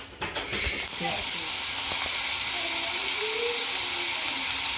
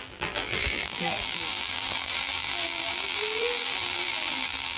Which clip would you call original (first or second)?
first